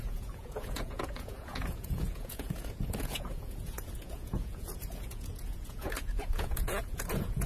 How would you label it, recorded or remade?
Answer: remade